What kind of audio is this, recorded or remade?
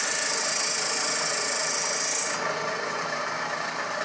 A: recorded